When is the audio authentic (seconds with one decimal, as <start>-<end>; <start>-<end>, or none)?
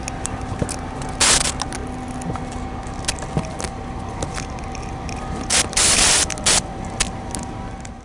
0.0-8.0